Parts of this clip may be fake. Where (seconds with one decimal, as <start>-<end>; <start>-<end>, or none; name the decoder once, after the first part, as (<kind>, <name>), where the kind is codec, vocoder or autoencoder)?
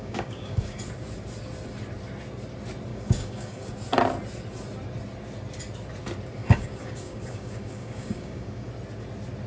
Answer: 0.0-0.8 (codec, DAC); 2.9-3.7; 6.4-8.7